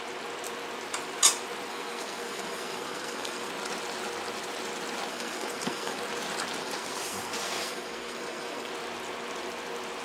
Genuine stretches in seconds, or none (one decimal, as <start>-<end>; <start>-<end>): 0.0-1.7; 3.5-5.1; 6.0-6.6; 8.7-10.0